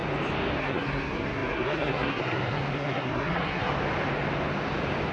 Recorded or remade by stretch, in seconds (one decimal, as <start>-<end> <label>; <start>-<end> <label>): 0.0-0.6 recorded; 0.6-3.7 remade; 3.7-5.1 recorded